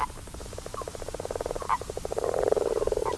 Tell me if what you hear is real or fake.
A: fake